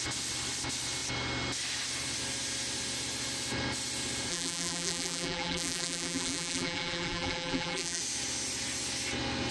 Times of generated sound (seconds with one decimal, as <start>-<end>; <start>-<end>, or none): 4.3-8.0